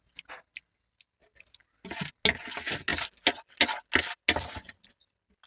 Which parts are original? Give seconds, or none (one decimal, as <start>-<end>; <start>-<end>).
0.0-5.5